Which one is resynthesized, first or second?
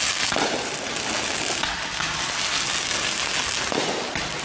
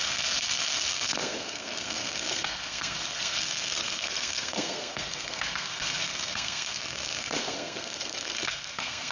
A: second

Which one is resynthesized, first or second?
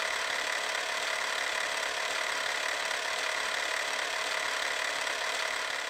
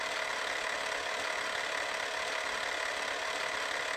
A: first